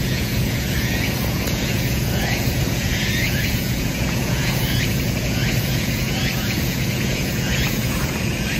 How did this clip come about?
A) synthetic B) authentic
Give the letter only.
A